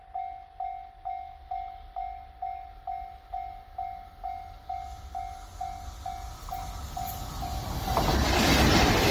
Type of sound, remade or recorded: recorded